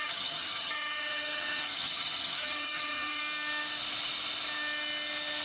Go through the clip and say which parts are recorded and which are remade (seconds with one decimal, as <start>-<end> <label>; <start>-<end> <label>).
0.0-3.2 remade; 3.2-5.4 recorded